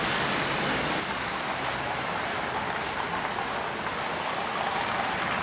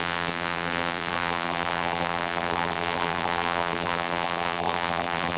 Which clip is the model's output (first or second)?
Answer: second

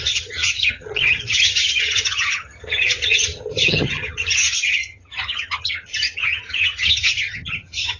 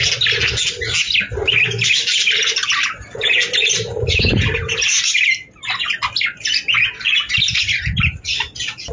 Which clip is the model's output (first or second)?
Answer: first